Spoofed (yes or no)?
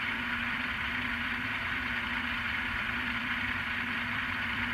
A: yes